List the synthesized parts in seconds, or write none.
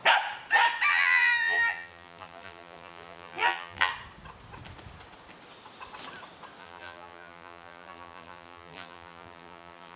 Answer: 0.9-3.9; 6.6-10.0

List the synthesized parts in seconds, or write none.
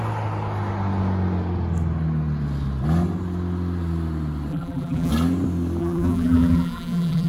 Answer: 4.5-5.1; 5.8-7.3